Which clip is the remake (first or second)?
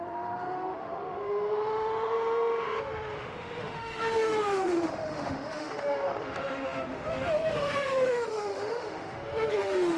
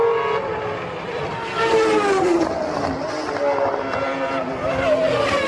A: first